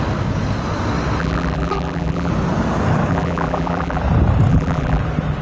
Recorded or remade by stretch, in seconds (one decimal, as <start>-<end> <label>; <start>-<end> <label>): 0.0-1.2 recorded; 1.2-2.3 remade; 2.3-3.1 recorded; 3.1-4.0 remade; 4.0-4.5 recorded; 4.5-5.0 remade; 5.0-5.4 recorded